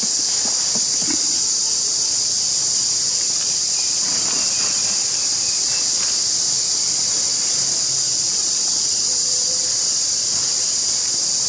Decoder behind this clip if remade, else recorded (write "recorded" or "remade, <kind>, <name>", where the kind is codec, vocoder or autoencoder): remade, vocoder, BigVGAN v2